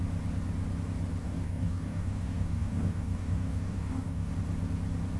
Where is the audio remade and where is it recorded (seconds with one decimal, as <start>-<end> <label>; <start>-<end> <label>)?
0.0-1.2 recorded; 1.2-4.3 remade; 4.3-5.2 recorded